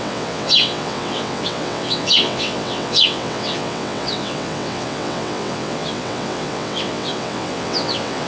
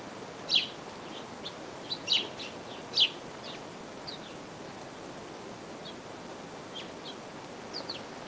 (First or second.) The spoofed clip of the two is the first